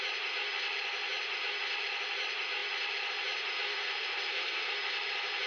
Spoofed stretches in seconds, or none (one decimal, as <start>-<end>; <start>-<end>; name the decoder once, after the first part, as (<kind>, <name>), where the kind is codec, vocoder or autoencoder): 3.7-4.7 (codec, SNAC)